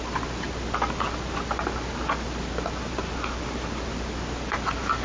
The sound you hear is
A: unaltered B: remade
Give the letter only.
A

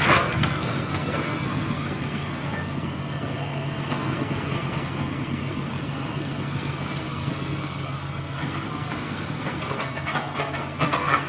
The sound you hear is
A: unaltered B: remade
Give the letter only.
B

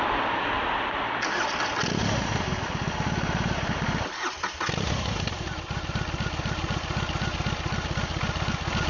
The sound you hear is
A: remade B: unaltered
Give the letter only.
B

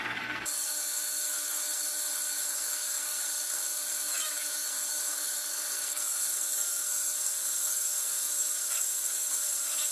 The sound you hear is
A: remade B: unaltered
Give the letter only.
A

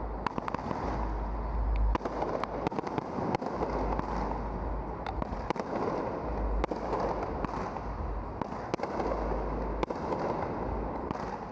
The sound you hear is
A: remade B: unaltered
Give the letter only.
B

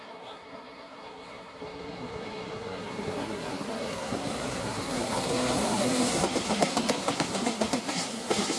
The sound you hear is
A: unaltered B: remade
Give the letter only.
B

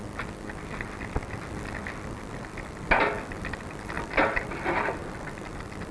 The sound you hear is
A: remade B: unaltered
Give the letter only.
B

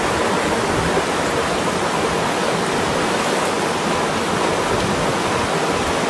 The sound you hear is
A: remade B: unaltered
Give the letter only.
B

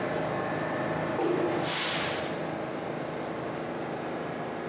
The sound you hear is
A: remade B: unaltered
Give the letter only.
B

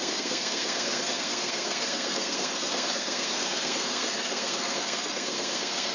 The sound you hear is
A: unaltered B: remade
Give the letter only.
B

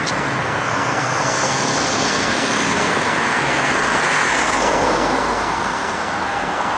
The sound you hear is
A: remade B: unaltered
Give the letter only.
A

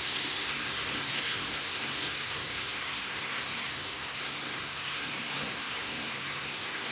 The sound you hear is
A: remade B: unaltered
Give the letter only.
A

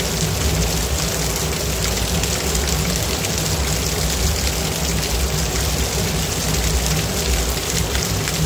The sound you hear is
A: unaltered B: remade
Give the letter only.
A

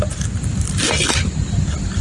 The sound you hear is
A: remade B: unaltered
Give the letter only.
B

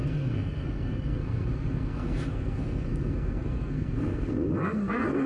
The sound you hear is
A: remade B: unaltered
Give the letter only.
A